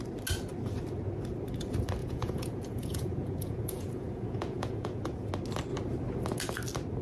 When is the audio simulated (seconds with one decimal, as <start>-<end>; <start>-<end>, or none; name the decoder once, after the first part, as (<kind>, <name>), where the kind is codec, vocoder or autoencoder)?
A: 2.0-5.3 (vocoder, Vocos)